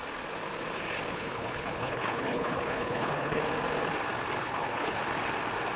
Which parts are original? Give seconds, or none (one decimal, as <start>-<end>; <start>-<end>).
0.0-1.1; 3.4-4.4; 5.0-5.8